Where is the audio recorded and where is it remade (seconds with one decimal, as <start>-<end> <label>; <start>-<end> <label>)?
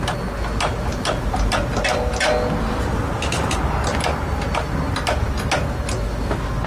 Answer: 0.0-0.9 recorded; 0.9-1.7 remade; 1.7-3.9 recorded; 3.9-5.3 remade; 5.3-6.7 recorded